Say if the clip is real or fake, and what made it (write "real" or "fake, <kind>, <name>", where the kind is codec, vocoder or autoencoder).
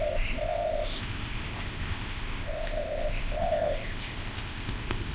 fake, codec, ZipCodec